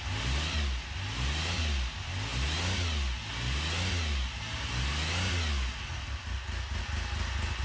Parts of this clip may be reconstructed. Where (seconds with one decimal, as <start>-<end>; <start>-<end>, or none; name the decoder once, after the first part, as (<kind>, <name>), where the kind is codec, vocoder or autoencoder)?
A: none